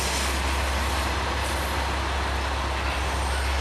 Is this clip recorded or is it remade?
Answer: recorded